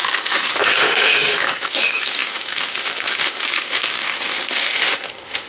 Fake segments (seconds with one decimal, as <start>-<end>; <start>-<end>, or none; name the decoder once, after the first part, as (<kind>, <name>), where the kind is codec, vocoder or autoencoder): 0.0-5.5 (autoencoder, DAC-VAE)

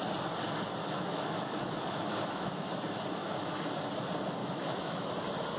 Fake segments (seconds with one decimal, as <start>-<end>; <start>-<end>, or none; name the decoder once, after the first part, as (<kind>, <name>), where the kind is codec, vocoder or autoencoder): 0.8-2.7 (autoencoder, DAC-VAE); 3.2-3.8; 4.4-5.1

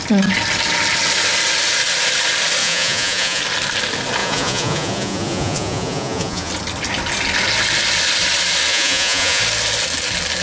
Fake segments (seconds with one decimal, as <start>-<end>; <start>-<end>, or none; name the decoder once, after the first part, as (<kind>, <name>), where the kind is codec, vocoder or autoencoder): 2.6-3.4 (vocoder, Vocos); 4.2-6.5; 8.7-9.4

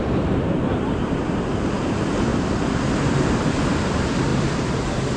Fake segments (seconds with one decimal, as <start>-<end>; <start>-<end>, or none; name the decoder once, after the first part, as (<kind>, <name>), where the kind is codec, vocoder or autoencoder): 0.0-2.3 (vocoder, BigVGAN v2); 3.6-5.2

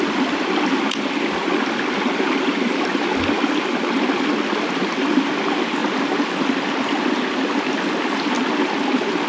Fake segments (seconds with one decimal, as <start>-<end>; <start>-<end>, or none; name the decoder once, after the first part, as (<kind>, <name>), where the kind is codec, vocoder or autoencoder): none

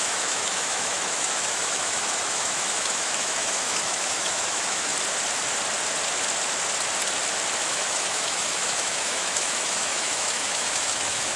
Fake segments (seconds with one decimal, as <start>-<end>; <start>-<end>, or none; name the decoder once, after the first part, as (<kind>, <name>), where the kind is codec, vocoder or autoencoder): 0.0-4.9 (autoencoder, DAC-VAE); 7.6-11.4